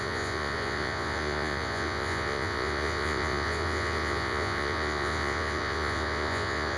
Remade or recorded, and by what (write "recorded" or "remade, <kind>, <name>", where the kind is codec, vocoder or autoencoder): remade, vocoder, Vocos